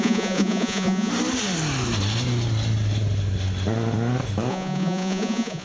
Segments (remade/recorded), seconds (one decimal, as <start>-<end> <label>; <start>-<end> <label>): 0.0-1.1 remade; 1.1-4.5 recorded; 4.5-5.6 remade